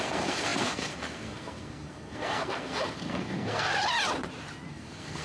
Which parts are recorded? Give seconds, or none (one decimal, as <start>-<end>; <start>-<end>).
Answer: 3.7-4.7